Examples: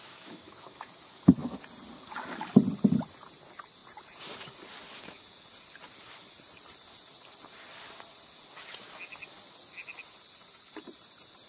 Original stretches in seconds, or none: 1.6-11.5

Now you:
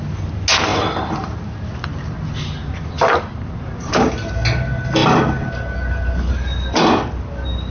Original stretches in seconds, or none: 0.0-7.7

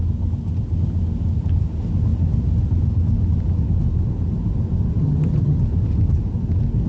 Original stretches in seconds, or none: 0.0-5.0; 5.6-6.9

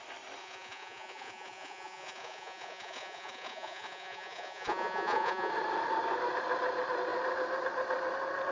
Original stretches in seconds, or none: 0.0-0.4; 5.5-8.5

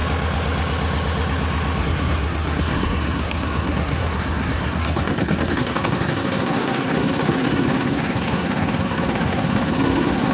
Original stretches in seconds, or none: 0.0-1.8

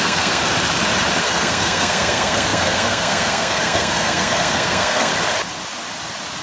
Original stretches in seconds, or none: 0.4-1.2; 5.1-6.4